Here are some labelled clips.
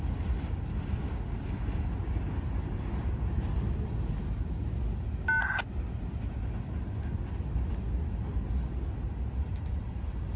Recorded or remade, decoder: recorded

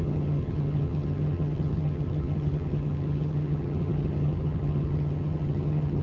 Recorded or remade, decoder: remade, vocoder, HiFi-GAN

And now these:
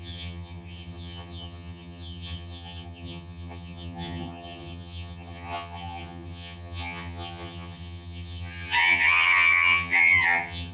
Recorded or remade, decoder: remade, vocoder, HiFi-GAN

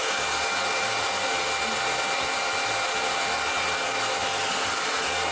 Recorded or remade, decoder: recorded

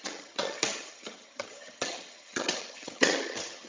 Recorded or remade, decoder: remade, vocoder, HiFi-GAN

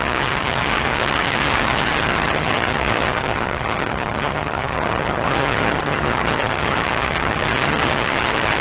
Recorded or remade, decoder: remade, vocoder, HiFi-GAN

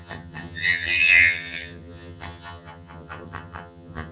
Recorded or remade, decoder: remade, vocoder, HiFi-GAN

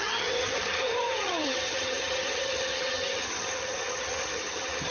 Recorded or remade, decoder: remade, vocoder, HiFi-GAN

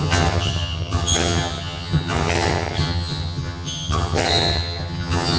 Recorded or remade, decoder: remade, vocoder, HiFi-GAN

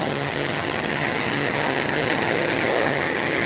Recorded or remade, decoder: remade, vocoder, HiFi-GAN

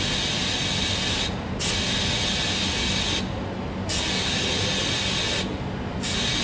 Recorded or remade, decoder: recorded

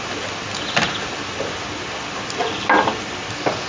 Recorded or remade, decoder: recorded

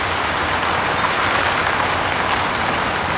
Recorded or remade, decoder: recorded